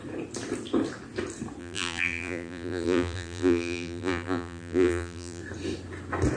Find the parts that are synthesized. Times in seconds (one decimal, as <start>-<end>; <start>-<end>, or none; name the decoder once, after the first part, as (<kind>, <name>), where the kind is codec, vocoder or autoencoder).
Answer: 1.6-5.4 (vocoder, BigVGAN v2)